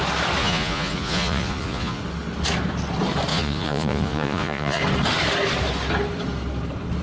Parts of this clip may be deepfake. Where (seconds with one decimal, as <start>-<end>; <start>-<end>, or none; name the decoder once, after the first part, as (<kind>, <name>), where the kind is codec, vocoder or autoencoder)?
0.4-2.0 (vocoder, Vocos); 3.3-4.8